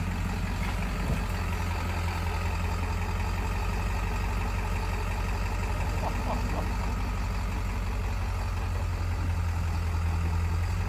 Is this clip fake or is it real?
real